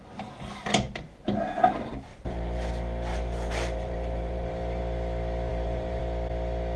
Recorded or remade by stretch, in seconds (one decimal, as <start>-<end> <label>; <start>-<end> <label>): 0.0-2.1 recorded; 2.1-2.7 remade; 2.7-3.1 recorded; 3.1-4.8 remade; 4.8-5.5 recorded; 5.5-6.0 remade; 6.0-6.8 recorded